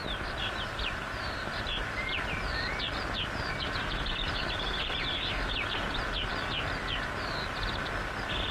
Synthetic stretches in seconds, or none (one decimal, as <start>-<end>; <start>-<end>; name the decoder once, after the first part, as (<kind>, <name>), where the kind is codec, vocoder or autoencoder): 0.0-2.1 (vocoder, BigVGAN v2)